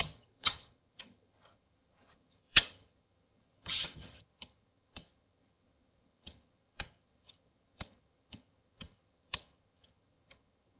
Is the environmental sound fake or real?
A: fake